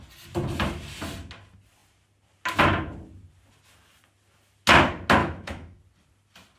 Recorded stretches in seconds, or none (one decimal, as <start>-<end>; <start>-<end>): 0.0-5.2; 5.8-6.6